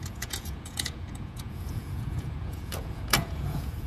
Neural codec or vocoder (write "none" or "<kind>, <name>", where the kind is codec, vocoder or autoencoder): vocoder, Vocos